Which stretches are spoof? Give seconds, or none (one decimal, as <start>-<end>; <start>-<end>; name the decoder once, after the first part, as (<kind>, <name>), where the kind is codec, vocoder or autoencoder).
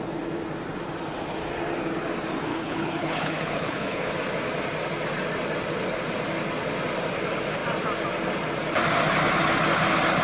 2.5-4.1 (codec, HILCodec)